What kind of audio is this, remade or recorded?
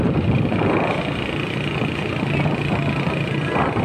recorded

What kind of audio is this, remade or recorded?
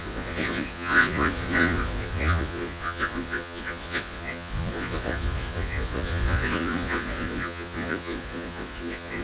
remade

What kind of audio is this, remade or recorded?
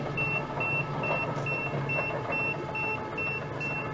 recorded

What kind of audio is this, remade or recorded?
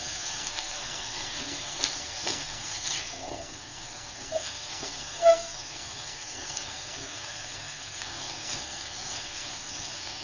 remade